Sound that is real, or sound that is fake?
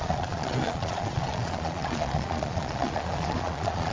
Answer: fake